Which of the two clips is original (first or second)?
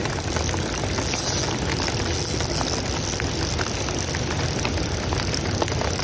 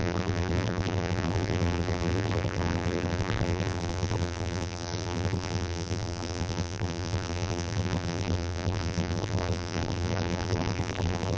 first